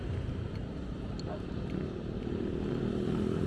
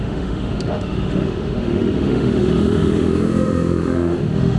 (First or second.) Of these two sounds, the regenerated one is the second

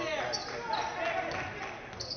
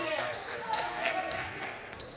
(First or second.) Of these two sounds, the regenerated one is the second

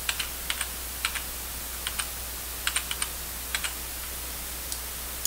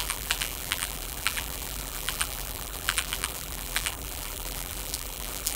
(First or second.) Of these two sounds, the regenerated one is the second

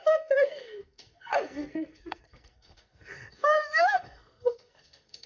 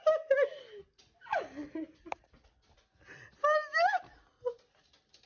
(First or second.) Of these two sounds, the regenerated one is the first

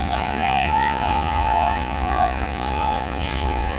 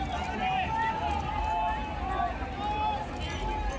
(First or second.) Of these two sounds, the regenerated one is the first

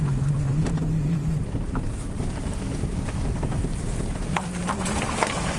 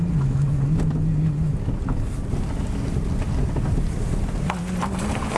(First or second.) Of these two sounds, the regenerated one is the first